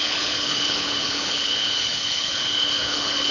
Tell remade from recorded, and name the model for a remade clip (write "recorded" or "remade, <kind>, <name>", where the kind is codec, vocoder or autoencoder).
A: remade, codec, HILCodec